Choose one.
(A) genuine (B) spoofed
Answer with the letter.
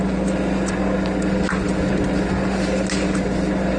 A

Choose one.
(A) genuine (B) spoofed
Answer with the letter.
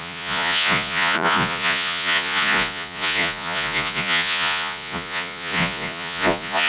B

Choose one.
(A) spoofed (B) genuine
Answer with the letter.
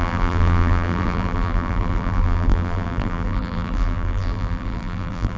A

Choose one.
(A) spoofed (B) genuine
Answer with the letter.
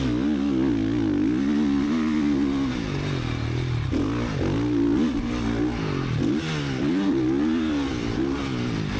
B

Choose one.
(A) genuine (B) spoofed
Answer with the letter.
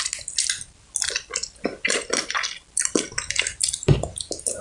A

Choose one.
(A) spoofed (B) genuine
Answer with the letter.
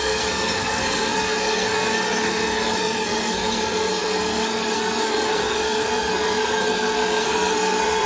A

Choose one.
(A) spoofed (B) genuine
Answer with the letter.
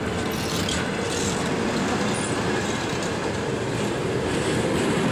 B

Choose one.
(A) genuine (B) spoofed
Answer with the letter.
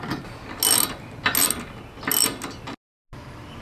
A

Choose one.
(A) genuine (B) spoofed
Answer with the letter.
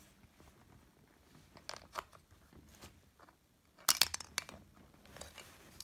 A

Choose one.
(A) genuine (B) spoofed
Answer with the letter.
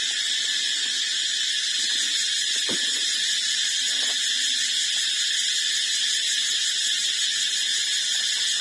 A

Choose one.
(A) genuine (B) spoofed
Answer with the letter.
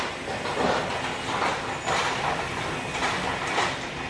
A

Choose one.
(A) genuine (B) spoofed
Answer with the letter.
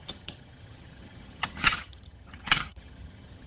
B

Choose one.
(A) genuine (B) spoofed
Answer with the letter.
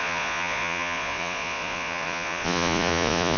B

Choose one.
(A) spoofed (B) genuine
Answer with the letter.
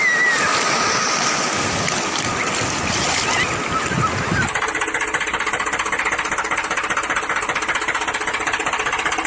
B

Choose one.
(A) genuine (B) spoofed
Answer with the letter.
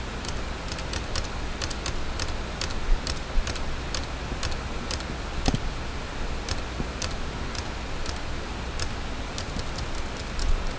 A